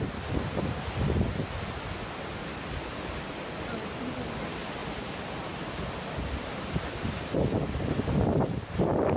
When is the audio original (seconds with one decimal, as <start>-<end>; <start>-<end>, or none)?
0.0-4.8; 5.7-9.2